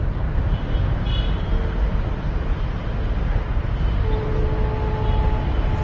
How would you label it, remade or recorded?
recorded